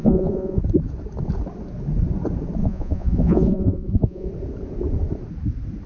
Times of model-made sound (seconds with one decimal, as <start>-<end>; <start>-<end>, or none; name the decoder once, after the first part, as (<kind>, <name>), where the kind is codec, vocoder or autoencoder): 0.0-0.6 (vocoder, Vocos); 2.6-4.3